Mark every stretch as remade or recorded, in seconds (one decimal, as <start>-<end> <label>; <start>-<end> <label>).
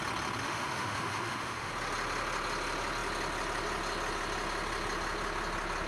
0.0-0.4 recorded; 0.4-1.7 remade; 1.7-5.9 recorded